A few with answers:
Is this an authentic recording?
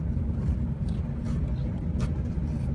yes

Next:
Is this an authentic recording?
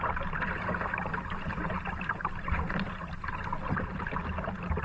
yes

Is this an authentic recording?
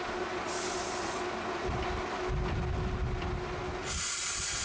yes